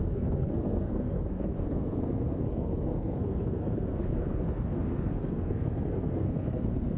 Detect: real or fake fake